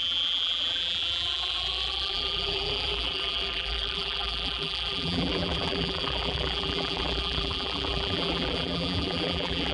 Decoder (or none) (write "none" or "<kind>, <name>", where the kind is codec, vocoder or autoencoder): vocoder, BigVGAN v2